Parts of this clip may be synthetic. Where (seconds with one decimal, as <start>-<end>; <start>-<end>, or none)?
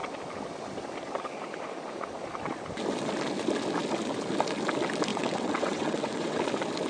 5.1-6.4